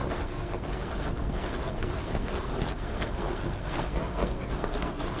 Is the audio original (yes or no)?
no